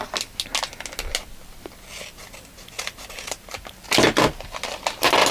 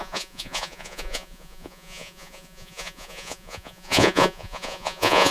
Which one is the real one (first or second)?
first